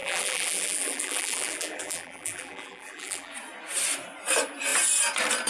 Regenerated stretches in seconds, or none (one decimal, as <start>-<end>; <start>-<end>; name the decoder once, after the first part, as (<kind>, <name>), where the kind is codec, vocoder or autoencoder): 0.0-3.3 (vocoder, BigVGAN v2)